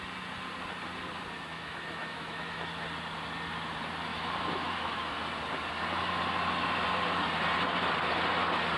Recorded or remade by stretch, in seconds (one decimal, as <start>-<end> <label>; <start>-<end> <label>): 0.0-1.5 recorded; 1.5-2.7 remade; 2.7-4.1 recorded; 4.1-5.1 remade; 5.1-8.8 recorded

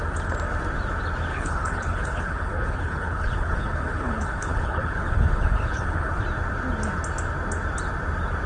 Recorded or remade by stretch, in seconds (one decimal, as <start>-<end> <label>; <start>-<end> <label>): 0.0-1.3 recorded; 1.3-6.2 remade; 6.2-8.5 recorded

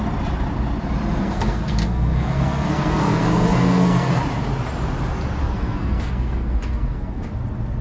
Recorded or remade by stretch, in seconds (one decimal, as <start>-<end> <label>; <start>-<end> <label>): 0.0-1.2 recorded; 1.2-4.1 remade; 4.1-5.4 recorded; 5.4-7.3 remade; 7.3-7.8 recorded

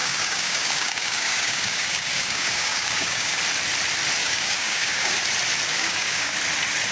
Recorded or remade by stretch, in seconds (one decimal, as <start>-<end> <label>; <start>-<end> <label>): 0.0-3.4 remade; 3.4-4.2 recorded; 4.2-5.1 remade; 5.1-5.7 recorded; 5.7-6.3 remade; 6.3-6.9 recorded

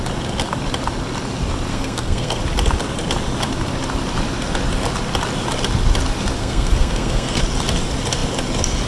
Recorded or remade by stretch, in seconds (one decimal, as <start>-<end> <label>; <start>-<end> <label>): 0.0-1.7 recorded; 1.7-2.4 remade; 2.4-6.4 recorded; 6.4-7.4 remade; 7.4-8.9 recorded

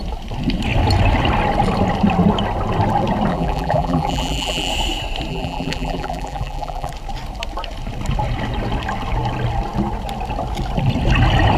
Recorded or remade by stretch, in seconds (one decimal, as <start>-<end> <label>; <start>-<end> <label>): 0.0-3.3 recorded; 3.3-4.7 remade; 4.7-5.3 recorded; 5.3-6.9 remade; 6.9-11.6 recorded